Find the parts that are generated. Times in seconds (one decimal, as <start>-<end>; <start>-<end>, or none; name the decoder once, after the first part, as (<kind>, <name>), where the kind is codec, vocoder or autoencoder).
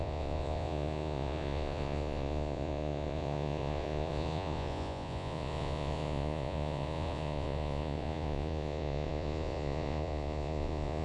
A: 0.0-11.0 (vocoder, Vocos)